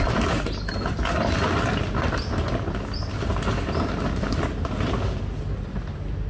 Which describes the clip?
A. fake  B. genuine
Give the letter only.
B